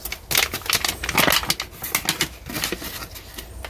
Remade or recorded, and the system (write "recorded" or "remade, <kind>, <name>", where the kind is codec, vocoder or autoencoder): recorded